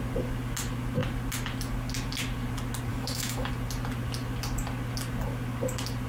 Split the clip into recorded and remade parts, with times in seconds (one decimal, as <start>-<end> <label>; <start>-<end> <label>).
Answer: 0.0-2.9 recorded; 2.9-3.5 remade; 3.5-6.1 recorded